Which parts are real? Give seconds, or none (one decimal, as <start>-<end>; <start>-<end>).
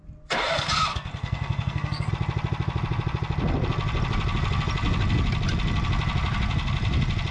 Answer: 0.0-0.9; 2.1-7.3